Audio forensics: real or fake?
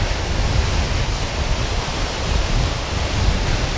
real